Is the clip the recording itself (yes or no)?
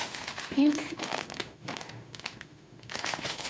no